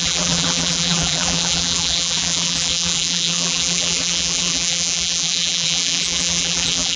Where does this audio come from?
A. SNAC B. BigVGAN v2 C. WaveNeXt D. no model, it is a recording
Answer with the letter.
B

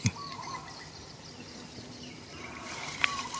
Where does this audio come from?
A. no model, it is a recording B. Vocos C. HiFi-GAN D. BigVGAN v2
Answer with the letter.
A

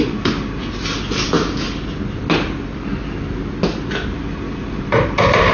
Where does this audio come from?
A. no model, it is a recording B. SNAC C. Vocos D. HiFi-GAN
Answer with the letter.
A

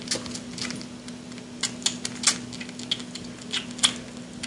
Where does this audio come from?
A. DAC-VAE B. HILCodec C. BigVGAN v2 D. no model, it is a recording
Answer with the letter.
D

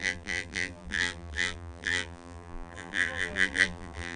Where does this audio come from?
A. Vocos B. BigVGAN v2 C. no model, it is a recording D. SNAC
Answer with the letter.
B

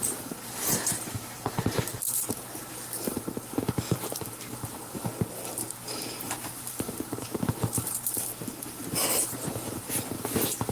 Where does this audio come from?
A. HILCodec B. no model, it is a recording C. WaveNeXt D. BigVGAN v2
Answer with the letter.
D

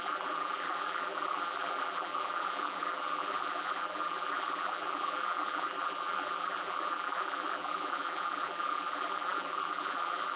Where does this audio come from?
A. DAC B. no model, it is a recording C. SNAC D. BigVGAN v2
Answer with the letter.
D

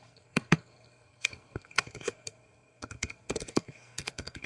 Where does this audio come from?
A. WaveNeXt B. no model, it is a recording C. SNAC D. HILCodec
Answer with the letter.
C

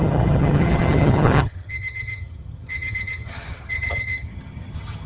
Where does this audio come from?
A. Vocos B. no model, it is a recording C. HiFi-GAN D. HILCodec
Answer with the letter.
C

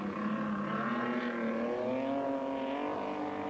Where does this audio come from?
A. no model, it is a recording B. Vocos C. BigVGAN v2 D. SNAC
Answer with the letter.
A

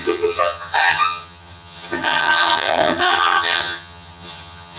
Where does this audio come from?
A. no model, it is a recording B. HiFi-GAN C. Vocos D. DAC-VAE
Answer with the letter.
B